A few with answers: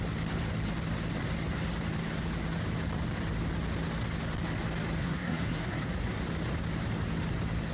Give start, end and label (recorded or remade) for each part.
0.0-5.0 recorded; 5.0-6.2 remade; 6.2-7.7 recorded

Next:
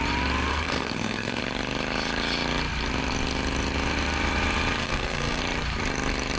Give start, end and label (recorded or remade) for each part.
0.0-0.5 recorded; 0.5-1.4 remade; 1.4-4.8 recorded; 4.8-5.4 remade; 5.4-6.4 recorded

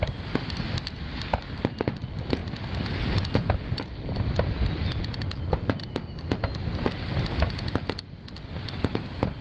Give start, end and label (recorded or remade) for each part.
0.0-9.4 recorded

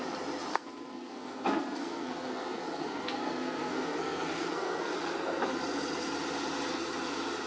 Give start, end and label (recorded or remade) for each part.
0.0-0.5 recorded; 0.5-5.0 remade; 5.0-7.5 recorded